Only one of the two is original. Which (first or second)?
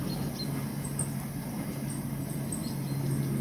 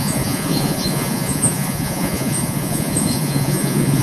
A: first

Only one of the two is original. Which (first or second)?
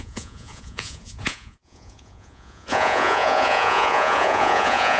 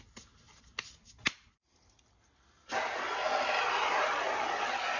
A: second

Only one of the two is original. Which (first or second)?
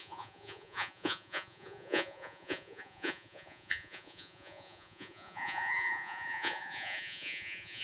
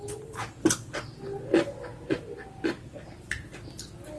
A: second